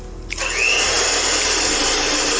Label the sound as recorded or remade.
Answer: recorded